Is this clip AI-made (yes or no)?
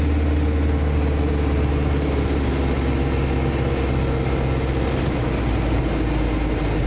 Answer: no